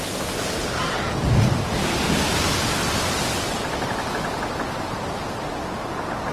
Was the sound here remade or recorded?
recorded